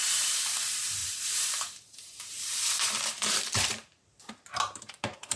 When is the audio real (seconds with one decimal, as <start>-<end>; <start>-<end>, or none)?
none